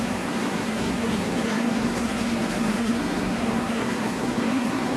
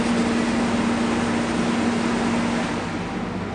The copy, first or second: first